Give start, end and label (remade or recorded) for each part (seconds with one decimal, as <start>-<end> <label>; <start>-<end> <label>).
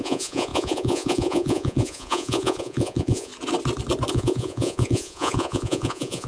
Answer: 0.0-3.3 remade; 3.3-4.1 recorded; 4.1-6.3 remade